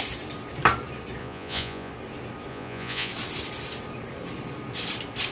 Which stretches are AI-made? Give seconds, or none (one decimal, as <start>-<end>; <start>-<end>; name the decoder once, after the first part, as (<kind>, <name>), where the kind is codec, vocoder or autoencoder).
1.2-1.9 (vocoder, Vocos); 2.5-3.1